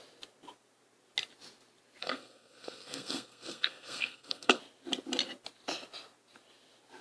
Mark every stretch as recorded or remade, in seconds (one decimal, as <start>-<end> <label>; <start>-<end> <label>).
0.0-2.0 recorded; 2.0-4.6 remade; 4.6-7.0 recorded

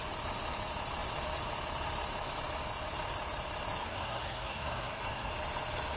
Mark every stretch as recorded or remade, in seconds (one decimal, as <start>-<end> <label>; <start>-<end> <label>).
0.0-3.8 recorded; 3.8-5.3 remade; 5.3-6.0 recorded

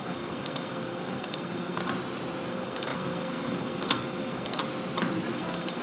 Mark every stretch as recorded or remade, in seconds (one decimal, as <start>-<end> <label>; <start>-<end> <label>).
0.0-1.8 remade; 1.8-2.5 recorded; 2.5-4.6 remade; 4.6-5.3 recorded; 5.3-5.8 remade

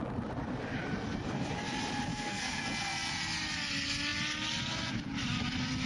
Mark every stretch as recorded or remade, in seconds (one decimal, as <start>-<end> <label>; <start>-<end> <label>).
0.0-2.1 recorded; 2.1-2.6 remade; 2.6-5.9 recorded

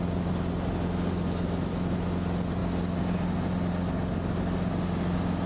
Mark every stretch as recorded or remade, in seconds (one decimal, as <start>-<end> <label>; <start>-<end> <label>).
0.0-5.5 recorded

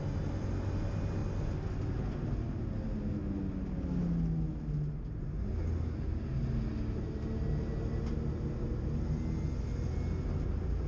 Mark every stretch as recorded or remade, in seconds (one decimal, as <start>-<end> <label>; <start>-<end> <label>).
0.0-10.9 recorded